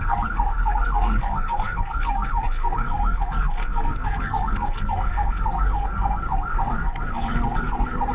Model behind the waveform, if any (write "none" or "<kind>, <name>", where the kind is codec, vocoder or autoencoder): codec, SNAC